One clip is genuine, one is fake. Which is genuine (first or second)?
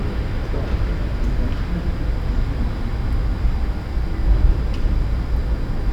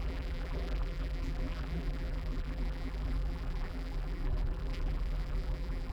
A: first